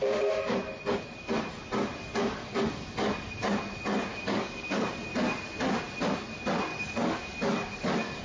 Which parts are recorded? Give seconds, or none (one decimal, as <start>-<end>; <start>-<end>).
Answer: 0.0-4.1; 4.9-6.7